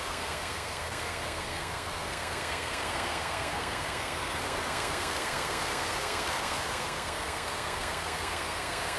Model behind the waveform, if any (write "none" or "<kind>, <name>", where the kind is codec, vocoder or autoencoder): codec, SNAC